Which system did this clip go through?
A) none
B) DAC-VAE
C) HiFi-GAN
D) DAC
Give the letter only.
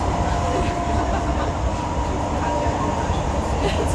A